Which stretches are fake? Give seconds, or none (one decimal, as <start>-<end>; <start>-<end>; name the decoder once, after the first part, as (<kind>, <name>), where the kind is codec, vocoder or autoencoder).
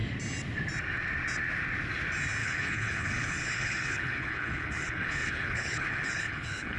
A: 2.4-6.8 (codec, HILCodec)